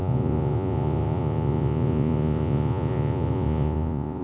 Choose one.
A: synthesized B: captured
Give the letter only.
A